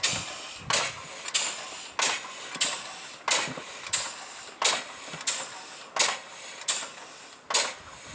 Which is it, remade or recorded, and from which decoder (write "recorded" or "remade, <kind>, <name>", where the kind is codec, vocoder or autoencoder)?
recorded